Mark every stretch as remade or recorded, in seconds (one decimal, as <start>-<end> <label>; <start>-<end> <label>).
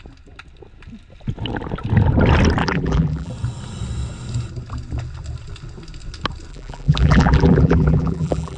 0.0-2.6 recorded; 2.6-3.3 remade; 3.3-6.5 recorded; 6.5-8.6 remade